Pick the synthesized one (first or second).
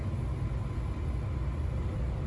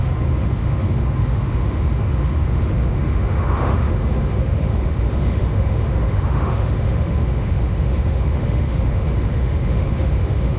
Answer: second